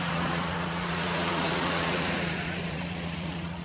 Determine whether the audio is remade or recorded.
remade